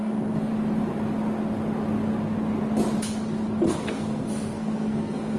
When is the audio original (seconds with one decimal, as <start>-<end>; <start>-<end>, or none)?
0.5-3.7